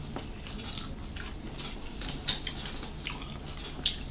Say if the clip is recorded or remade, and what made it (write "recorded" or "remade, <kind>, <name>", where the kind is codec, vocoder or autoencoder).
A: recorded